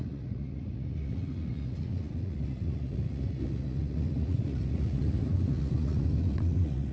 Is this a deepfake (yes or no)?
yes